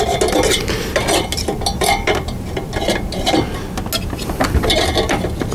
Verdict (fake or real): real